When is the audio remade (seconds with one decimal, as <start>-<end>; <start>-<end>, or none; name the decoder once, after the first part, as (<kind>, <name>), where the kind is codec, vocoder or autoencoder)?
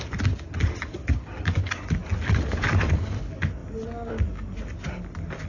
2.1-3.2 (vocoder, BigVGAN v2)